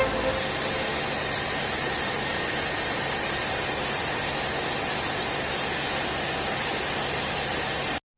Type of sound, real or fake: real